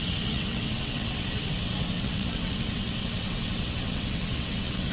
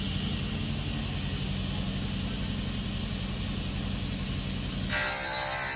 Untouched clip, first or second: second